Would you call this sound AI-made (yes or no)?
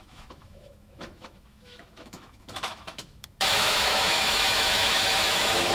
yes